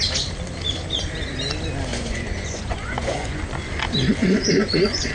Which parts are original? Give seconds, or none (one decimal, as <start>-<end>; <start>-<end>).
0.0-1.9; 3.4-4.2